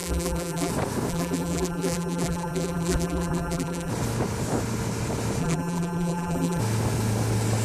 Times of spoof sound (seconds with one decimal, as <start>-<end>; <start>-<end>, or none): 0.0-0.7; 1.1-3.9; 5.4-6.6